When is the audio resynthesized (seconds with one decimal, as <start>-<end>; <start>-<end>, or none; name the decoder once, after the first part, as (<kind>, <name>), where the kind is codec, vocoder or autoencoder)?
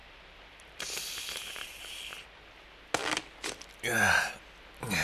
0.0-1.8 (vocoder, BigVGAN v2)